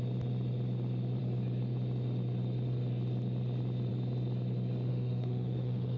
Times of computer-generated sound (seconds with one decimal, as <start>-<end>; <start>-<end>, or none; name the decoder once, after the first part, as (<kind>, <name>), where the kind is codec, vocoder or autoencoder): 4.9-6.0 (autoencoder, DAC-VAE)